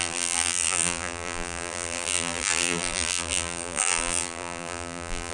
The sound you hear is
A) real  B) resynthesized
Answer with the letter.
B